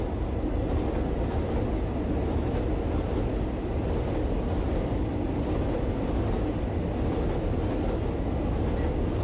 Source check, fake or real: real